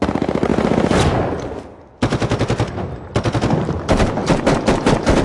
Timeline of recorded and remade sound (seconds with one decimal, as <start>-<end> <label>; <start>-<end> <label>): 0.0-5.2 recorded